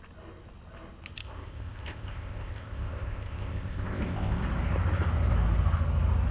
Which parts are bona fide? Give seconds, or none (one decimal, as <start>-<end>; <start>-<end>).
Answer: 0.0-1.2; 4.4-6.3